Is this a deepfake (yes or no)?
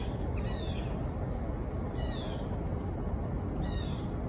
no